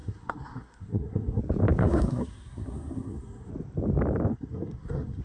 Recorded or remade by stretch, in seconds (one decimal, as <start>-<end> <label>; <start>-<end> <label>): 0.0-1.4 remade; 1.4-1.8 recorded; 1.8-3.5 remade; 3.5-4.3 recorded; 4.3-5.2 remade